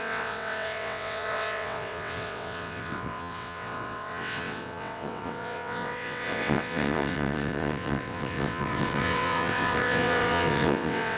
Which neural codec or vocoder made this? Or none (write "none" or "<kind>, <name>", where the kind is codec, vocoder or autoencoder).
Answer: vocoder, WaveNeXt